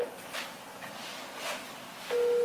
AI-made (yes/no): no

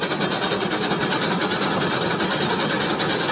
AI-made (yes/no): no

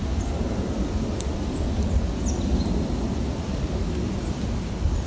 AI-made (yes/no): no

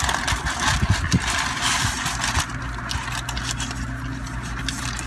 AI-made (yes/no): no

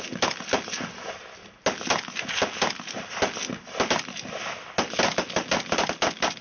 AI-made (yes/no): no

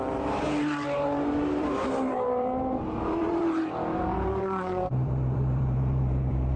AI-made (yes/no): yes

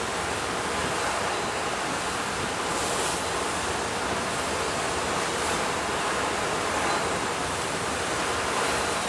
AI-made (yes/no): no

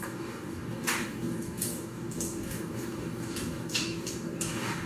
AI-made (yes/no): yes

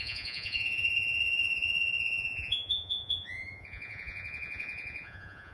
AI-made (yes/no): yes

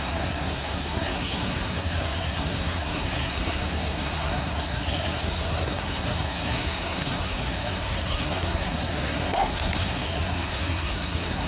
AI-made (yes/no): yes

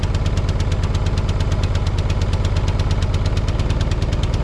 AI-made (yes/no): no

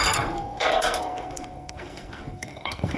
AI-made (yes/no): yes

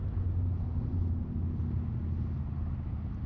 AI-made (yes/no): no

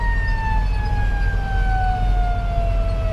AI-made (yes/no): no